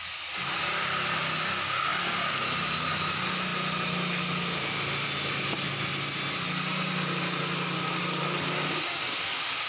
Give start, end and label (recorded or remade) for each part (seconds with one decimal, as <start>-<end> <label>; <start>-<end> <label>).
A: 0.0-9.7 recorded